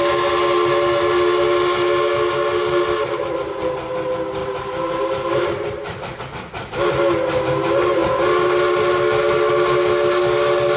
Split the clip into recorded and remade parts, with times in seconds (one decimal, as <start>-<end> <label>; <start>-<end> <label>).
0.0-4.4 recorded; 4.4-6.2 remade; 6.2-10.8 recorded